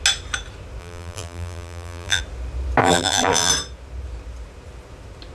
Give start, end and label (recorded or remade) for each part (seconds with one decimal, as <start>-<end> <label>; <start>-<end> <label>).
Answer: 0.0-0.8 recorded; 0.8-2.2 remade; 2.2-2.8 recorded; 2.8-3.5 remade; 3.5-5.3 recorded